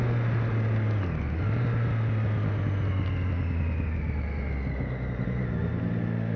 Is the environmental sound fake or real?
real